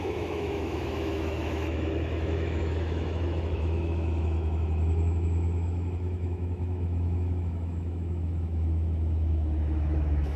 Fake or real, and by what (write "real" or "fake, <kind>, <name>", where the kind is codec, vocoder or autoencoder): fake, autoencoder, DAC-VAE